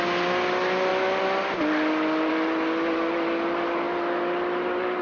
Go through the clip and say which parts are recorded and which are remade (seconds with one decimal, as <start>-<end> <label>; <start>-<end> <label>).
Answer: 0.0-5.0 recorded